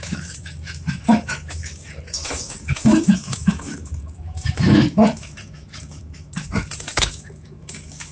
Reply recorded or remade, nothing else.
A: remade